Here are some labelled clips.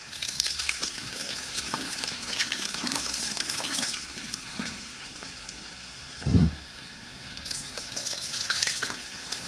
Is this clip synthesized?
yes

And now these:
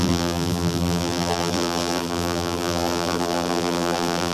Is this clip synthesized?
yes